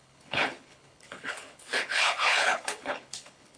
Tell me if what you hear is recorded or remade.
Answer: remade